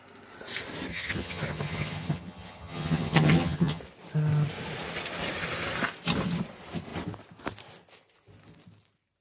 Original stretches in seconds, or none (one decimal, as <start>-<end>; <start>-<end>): 0.0-0.9; 3.8-9.2